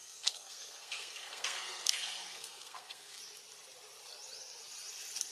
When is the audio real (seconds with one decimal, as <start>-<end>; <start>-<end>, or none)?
3.2-5.3